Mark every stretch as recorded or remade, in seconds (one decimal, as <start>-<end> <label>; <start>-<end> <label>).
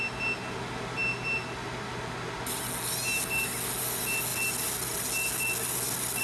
0.0-6.2 recorded